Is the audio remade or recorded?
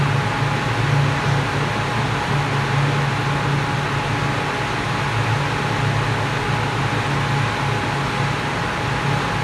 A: recorded